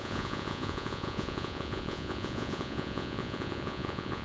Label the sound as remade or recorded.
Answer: remade